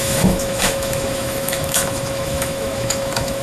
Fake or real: fake